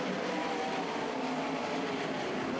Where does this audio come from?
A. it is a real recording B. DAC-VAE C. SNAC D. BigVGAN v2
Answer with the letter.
A